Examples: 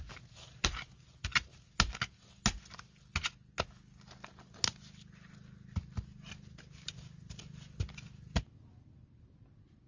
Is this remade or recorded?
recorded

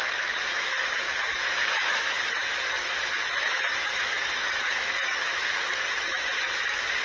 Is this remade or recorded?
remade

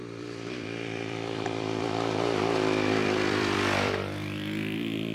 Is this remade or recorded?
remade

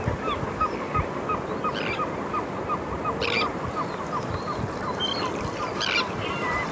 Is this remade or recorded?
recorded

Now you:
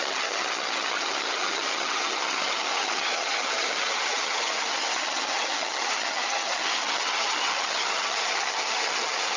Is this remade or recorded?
remade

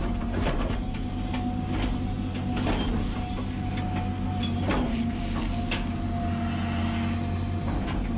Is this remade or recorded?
recorded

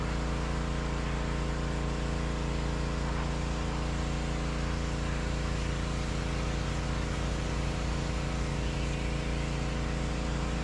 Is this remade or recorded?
recorded